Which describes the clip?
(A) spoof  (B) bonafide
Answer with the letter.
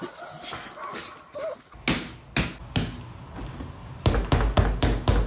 B